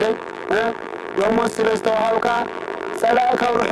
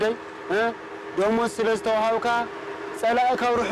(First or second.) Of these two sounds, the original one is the second